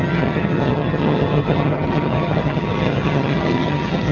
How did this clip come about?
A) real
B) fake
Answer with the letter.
B